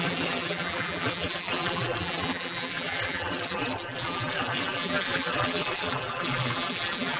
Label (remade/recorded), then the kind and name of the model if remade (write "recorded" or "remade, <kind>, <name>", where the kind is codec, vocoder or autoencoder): remade, vocoder, BigVGAN v2